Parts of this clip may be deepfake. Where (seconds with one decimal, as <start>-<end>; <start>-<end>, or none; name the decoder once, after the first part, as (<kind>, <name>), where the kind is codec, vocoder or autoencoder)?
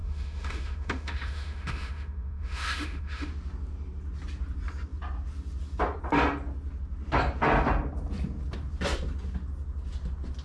0.0-3.3 (autoencoder, DAC-VAE)